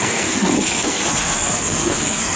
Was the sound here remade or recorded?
remade